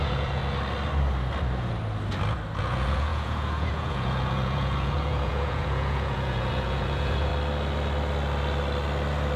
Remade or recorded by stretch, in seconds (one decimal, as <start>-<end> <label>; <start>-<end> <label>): 0.0-0.4 remade; 0.4-2.6 recorded; 2.6-7.3 remade; 7.3-9.4 recorded